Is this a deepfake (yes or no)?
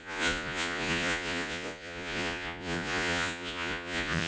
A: yes